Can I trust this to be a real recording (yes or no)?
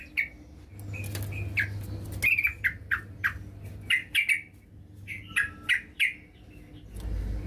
yes